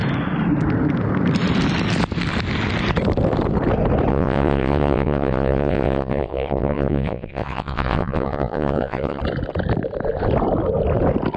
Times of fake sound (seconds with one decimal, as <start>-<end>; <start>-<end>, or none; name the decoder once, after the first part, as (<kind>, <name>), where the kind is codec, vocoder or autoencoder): 4.1-9.2 (vocoder, WaveNeXt)